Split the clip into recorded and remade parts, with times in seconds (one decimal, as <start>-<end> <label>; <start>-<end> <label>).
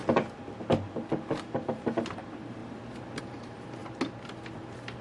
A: 0.0-1.3 recorded; 1.3-2.6 remade; 2.6-3.2 recorded; 3.2-3.8 remade; 3.8-5.0 recorded